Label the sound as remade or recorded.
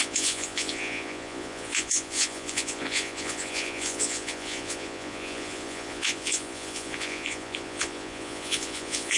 remade